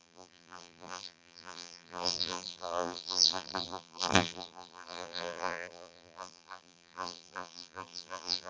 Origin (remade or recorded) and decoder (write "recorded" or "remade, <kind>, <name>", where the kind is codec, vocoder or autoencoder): remade, vocoder, BigVGAN v2